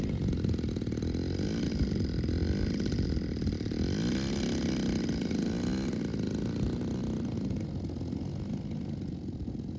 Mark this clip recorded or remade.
recorded